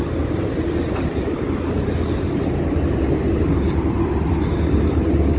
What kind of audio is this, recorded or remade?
recorded